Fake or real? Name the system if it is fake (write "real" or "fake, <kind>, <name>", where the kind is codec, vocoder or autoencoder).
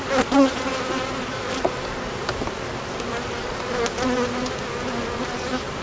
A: real